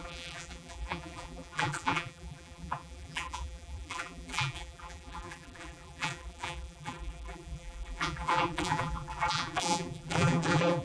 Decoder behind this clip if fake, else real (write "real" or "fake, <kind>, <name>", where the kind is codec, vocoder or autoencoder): fake, vocoder, BigVGAN v2